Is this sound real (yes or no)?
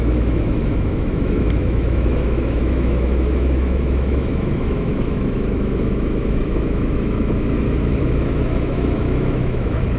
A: no